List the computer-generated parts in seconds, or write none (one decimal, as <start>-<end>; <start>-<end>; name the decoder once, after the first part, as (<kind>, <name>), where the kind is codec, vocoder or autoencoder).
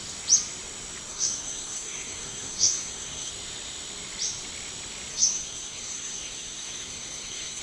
1.1-3.3 (codec, SNAC); 5.1-7.6